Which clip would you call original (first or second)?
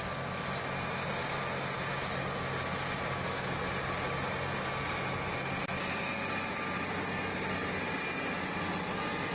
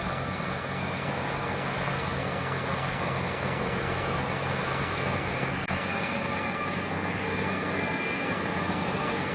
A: first